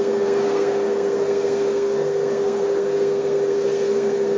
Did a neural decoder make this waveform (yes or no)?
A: yes